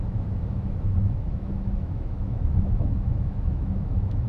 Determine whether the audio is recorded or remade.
remade